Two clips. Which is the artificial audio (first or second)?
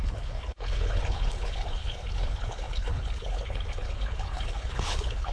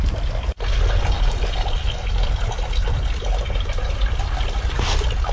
first